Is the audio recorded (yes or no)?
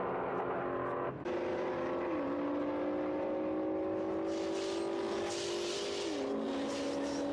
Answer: yes